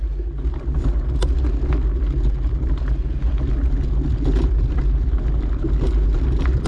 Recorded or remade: recorded